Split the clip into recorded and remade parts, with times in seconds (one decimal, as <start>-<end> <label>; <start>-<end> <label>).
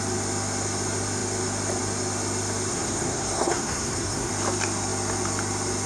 0.0-2.7 recorded; 2.7-4.3 remade; 4.3-5.9 recorded